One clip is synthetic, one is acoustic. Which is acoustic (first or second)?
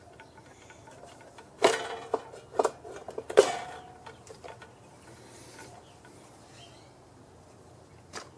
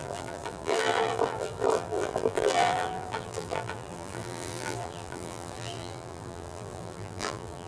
first